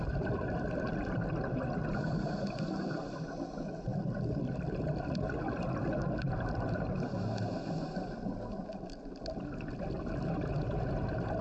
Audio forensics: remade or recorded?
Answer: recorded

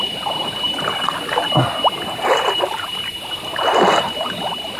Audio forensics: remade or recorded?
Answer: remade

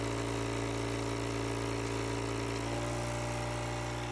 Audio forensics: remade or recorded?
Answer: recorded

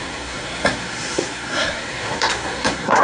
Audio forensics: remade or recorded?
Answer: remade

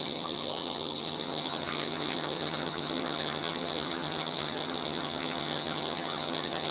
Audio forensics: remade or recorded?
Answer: remade